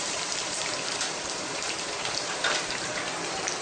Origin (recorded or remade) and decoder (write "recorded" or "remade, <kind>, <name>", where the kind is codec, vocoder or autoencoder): remade, vocoder, BigVGAN v2